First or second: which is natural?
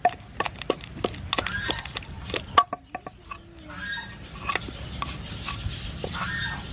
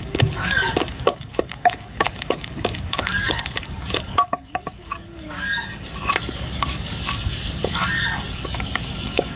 first